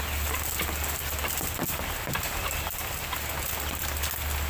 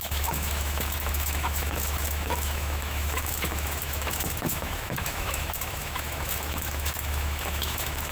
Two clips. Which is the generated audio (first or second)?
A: second